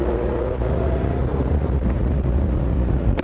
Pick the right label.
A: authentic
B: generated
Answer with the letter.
B